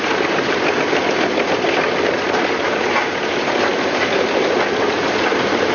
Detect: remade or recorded recorded